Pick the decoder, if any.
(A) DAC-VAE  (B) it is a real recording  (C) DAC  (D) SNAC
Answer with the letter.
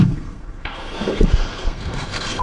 D